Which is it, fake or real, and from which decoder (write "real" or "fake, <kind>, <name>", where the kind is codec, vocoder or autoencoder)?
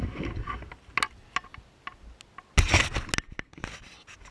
real